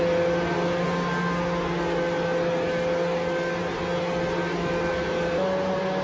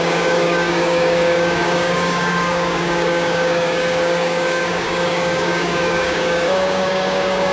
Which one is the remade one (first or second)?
second